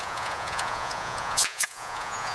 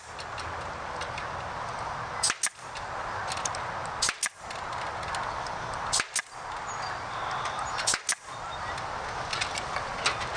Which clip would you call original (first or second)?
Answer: second